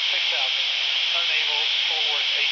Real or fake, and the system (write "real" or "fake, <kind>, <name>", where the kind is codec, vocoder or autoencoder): real